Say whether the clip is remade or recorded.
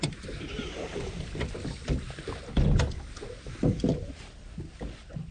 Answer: recorded